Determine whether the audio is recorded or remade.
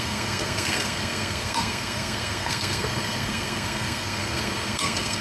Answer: remade